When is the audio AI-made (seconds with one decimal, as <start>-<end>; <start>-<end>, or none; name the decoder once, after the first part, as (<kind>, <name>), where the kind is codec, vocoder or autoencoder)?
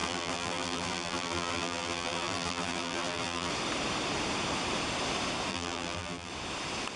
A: 0.0-3.5 (vocoder, BigVGAN v2); 5.5-6.3